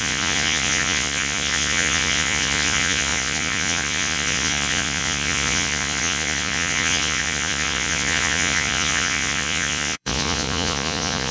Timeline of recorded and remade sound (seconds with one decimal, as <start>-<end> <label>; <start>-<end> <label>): 0.0-11.3 remade